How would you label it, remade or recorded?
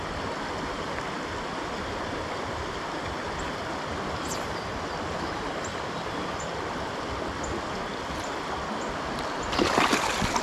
recorded